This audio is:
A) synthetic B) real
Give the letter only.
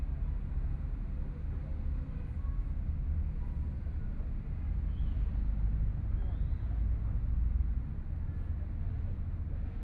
B